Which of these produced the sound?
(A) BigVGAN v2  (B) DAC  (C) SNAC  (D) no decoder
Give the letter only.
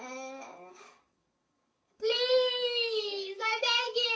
B